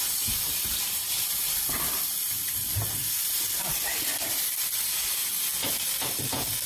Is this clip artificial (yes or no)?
no